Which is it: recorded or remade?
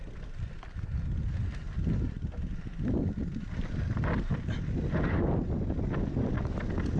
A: recorded